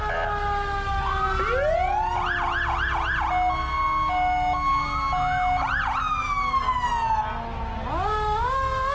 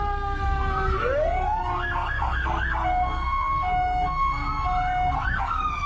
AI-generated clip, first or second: second